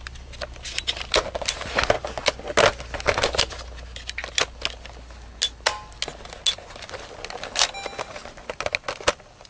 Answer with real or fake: real